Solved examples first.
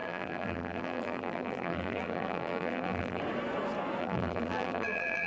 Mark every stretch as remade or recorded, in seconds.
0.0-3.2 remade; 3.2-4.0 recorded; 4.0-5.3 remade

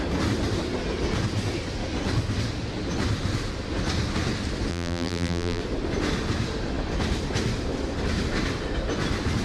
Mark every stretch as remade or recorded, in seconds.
0.0-4.7 recorded; 4.7-5.6 remade; 5.6-9.4 recorded

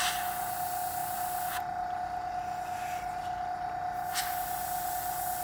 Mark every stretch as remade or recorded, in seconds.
0.0-5.4 recorded

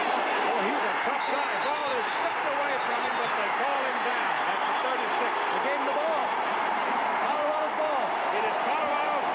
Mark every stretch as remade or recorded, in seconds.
0.0-1.8 recorded; 1.8-3.1 remade; 3.1-3.7 recorded; 3.7-4.3 remade; 4.3-6.2 recorded; 6.2-7.6 remade; 7.6-9.3 recorded